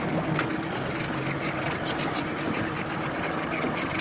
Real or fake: real